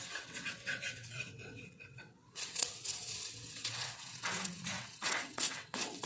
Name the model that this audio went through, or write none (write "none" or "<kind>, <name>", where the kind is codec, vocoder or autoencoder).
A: vocoder, WaveNeXt